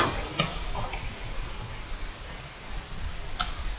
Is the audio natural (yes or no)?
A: yes